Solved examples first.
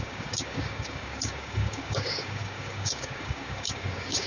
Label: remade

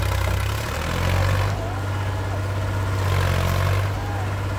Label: recorded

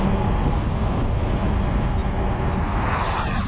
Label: recorded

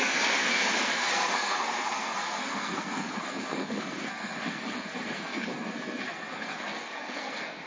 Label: remade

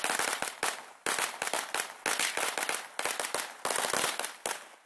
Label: recorded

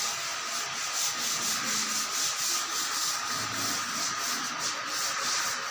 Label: recorded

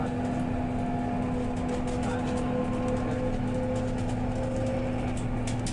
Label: recorded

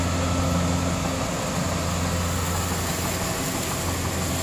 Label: recorded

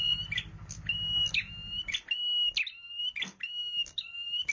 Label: recorded